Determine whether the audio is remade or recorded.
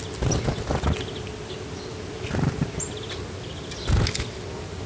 recorded